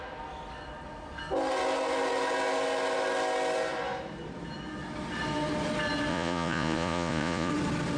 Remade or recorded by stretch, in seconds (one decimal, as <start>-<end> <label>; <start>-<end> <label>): 0.0-6.1 recorded; 6.1-7.5 remade; 7.5-8.0 recorded